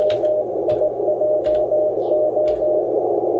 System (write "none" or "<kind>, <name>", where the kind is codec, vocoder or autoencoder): none